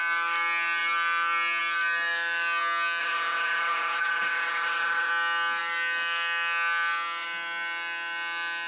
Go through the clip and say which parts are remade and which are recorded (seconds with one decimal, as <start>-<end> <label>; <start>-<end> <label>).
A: 0.0-3.0 recorded; 3.0-5.1 remade; 5.1-8.7 recorded